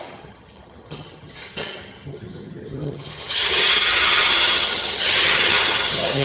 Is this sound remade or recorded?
remade